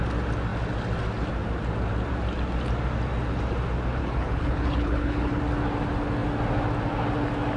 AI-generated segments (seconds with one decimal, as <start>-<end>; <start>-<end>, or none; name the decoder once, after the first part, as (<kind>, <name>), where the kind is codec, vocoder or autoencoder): 4.0-5.4 (codec, HILCodec)